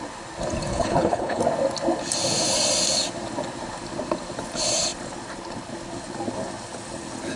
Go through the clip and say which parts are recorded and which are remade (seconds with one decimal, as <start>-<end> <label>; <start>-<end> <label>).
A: 0.0-0.7 recorded; 0.7-1.4 remade; 1.4-7.4 recorded